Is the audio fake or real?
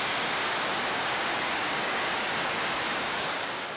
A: fake